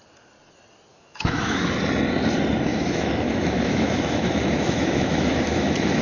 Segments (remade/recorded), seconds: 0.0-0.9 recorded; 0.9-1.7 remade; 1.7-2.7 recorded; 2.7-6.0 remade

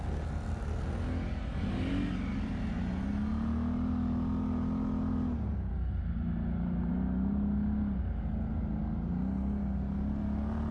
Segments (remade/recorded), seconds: 0.0-10.7 recorded

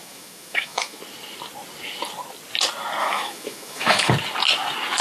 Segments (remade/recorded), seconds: 0.0-1.0 remade; 1.0-3.0 recorded; 3.0-4.1 remade; 4.1-5.0 recorded

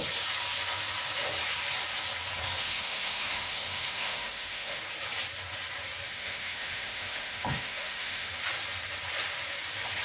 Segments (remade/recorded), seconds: 0.0-2.6 recorded; 2.6-4.8 remade; 4.8-6.1 recorded; 6.1-8.3 remade; 8.3-10.0 recorded

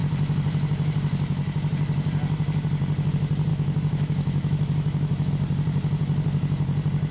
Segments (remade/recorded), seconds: 0.0-3.5 recorded; 3.5-5.3 remade; 5.3-7.1 recorded

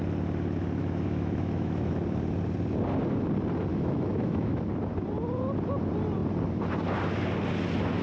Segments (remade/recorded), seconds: 0.0-0.8 recorded; 0.8-1.9 remade; 1.9-3.7 recorded; 3.7-4.6 remade; 4.6-8.0 recorded